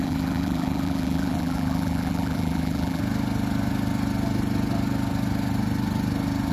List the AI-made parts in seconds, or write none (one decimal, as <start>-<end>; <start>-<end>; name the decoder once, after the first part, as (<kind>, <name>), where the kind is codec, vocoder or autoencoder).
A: 0.0-3.0 (vocoder, BigVGAN v2)